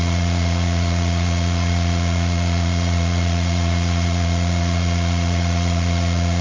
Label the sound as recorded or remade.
remade